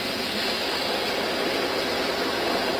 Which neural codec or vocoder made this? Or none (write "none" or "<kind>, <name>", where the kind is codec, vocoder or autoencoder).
none